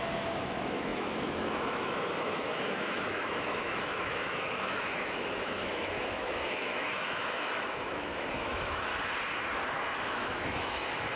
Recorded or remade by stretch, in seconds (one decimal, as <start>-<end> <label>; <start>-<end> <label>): 0.0-8.9 remade; 8.9-9.7 recorded; 9.7-11.2 remade